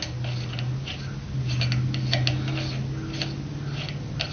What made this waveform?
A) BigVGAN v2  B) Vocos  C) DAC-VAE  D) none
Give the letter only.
D